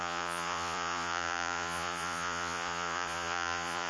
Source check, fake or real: fake